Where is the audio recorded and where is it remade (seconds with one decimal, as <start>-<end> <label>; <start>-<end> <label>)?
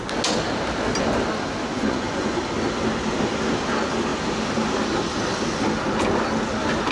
0.0-1.7 recorded; 1.7-2.4 remade; 2.4-6.9 recorded